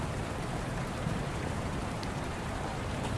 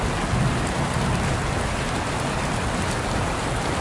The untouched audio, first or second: second